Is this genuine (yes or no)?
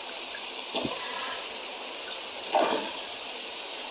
yes